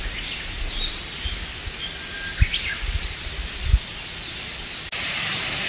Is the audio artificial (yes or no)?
no